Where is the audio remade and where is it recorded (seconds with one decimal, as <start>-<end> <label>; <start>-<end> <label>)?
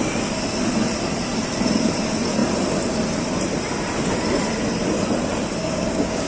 0.0-5.6 recorded; 5.6-6.3 remade